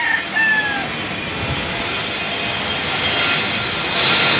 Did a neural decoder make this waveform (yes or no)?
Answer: no